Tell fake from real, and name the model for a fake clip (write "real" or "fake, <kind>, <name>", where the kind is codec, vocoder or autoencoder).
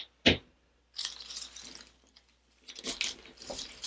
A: real